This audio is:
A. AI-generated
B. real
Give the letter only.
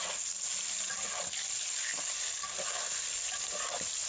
B